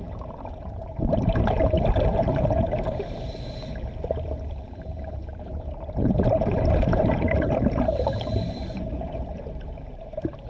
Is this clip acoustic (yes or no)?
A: no